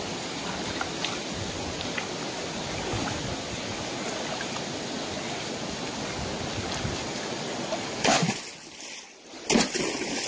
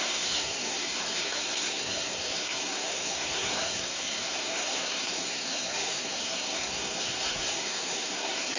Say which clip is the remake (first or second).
second